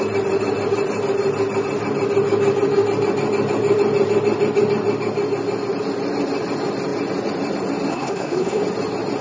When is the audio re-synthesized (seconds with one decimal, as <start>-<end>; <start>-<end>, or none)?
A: 7.9-8.6